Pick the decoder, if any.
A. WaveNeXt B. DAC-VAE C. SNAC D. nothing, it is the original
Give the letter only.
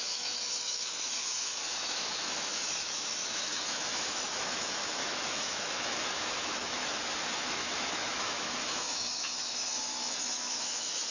B